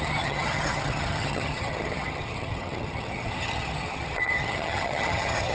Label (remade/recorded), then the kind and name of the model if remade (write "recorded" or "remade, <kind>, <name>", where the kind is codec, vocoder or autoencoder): remade, vocoder, HiFi-GAN